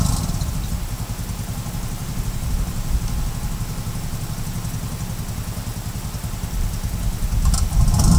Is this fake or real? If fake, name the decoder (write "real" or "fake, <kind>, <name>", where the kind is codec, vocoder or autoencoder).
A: real